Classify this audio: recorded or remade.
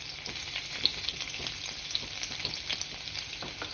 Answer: recorded